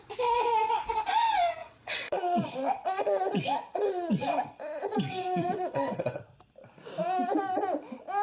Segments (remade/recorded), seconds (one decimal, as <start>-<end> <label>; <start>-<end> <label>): 0.0-1.6 recorded; 1.6-6.2 remade; 6.2-8.2 recorded